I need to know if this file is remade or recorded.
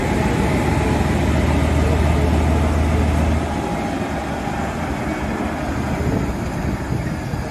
recorded